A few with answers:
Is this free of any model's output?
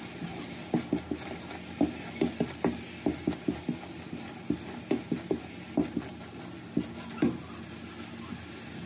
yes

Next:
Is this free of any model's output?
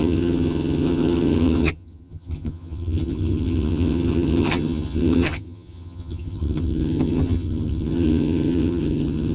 no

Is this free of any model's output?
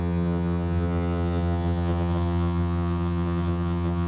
no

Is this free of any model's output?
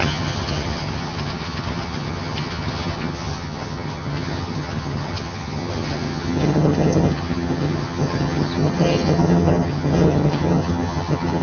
no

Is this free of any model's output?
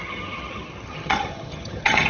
no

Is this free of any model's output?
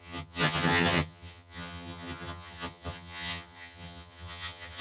no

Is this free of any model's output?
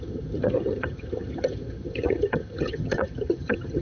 no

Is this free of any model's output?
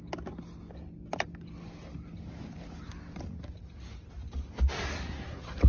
yes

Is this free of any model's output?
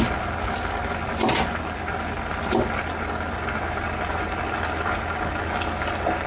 yes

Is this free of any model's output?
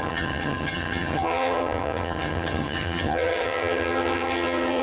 no